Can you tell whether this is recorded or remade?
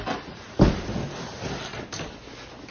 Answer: recorded